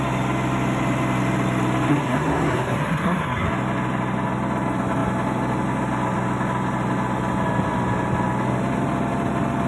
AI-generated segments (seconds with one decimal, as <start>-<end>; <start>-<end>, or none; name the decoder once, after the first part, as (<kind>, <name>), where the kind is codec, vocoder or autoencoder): 1.9-3.5 (codec, SNAC)